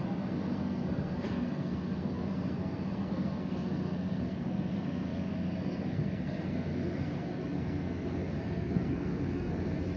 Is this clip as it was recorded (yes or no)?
no